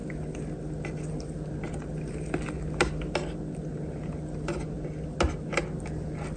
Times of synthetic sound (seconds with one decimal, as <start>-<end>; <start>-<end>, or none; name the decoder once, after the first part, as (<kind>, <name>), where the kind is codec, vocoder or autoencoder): none